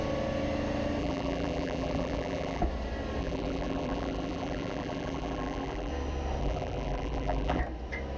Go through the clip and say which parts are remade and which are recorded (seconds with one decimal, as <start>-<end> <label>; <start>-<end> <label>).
0.0-1.0 recorded; 1.0-2.6 remade; 2.6-3.2 recorded; 3.2-5.9 remade; 5.9-6.4 recorded; 6.4-7.6 remade; 7.6-8.2 recorded